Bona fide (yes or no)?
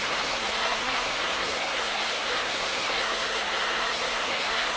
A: no